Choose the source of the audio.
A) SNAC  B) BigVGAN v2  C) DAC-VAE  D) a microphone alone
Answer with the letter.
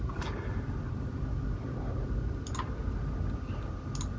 D